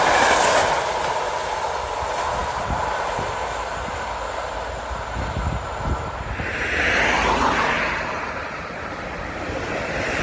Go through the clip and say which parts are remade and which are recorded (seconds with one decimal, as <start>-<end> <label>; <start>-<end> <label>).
0.0-2.4 recorded; 2.4-3.7 remade; 3.7-10.2 recorded